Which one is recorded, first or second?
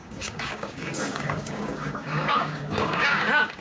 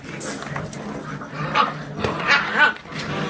second